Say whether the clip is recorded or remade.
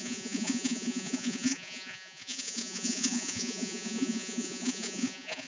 remade